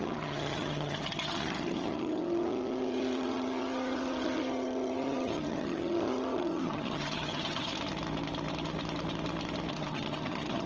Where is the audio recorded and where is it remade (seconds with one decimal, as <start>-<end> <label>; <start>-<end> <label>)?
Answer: 0.0-7.7 remade; 7.7-9.7 recorded; 9.7-10.7 remade